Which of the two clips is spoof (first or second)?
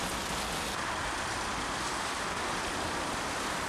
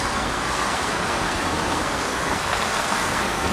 second